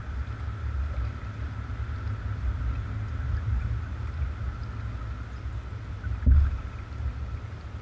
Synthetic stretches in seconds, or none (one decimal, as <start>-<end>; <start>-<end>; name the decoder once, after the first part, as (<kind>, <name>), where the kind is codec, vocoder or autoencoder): none